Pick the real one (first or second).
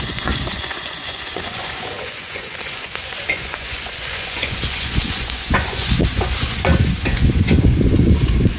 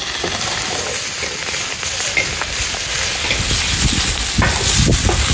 second